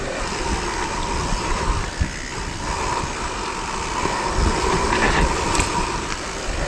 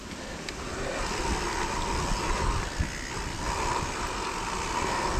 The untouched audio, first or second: second